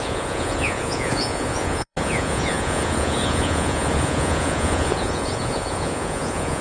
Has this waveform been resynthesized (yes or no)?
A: yes